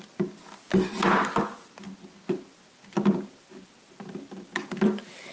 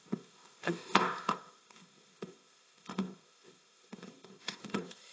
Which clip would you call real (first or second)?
first